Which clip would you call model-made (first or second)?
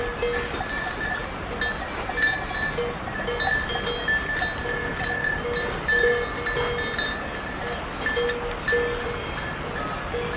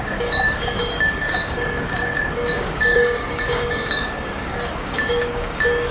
second